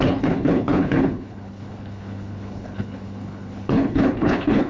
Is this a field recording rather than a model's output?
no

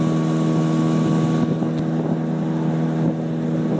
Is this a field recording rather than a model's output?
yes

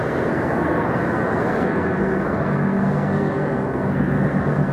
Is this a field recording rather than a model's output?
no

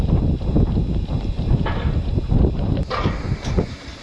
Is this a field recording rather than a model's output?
yes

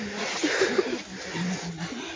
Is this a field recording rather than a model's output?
yes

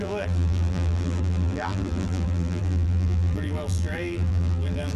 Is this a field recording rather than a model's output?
no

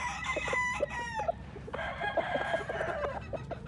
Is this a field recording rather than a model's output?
no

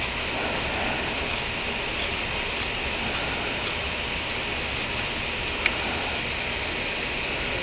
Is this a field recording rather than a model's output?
yes